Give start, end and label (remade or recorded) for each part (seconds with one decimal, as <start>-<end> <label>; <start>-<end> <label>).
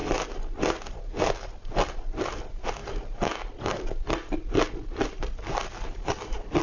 0.0-6.6 recorded